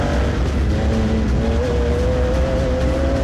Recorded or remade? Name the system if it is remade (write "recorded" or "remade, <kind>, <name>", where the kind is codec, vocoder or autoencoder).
recorded